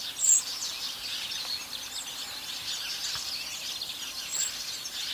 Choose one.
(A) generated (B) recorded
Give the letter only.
B